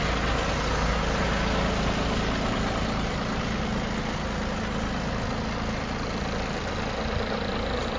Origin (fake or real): real